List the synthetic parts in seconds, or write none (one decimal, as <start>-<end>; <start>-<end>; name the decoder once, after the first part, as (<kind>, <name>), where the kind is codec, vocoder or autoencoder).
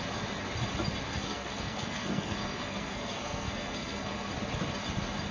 1.1-4.3 (codec, SNAC)